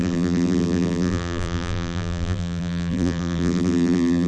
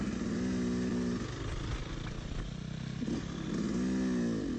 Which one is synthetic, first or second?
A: first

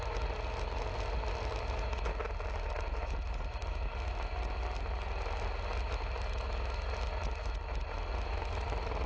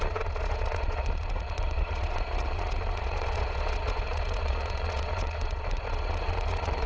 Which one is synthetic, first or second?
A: second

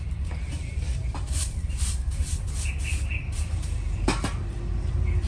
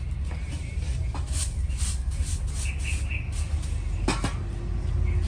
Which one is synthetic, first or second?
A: first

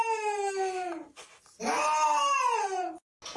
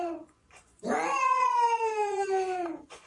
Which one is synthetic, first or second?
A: second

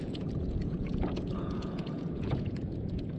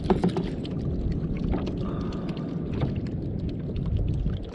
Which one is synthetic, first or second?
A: first